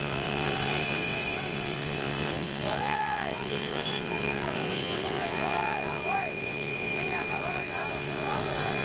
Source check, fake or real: fake